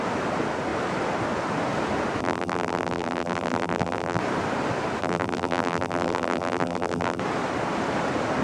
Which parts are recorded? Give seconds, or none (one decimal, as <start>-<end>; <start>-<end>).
0.0-2.2; 4.2-5.0; 7.2-8.4

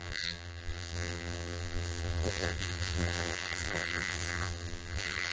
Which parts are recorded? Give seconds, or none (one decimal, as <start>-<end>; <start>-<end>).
none

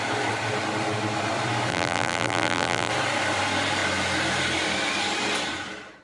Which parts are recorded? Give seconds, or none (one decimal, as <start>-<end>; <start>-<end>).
0.0-1.7; 2.9-6.0